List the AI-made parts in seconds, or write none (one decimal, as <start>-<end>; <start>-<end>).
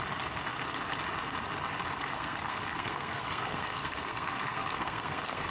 2.1-5.5